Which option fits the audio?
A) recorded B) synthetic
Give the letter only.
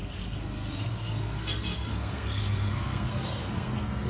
B